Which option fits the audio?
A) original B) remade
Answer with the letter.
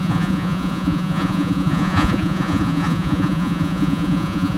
B